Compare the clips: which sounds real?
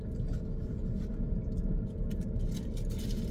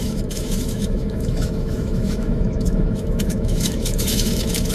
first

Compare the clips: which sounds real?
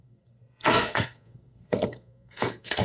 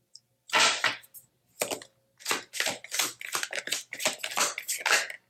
second